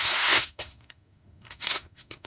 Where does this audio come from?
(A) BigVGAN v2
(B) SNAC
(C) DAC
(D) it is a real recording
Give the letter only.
B